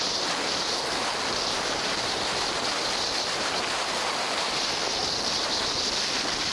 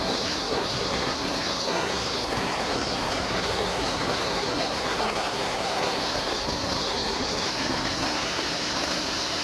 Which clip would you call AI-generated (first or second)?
second